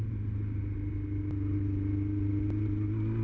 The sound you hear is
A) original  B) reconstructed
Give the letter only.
A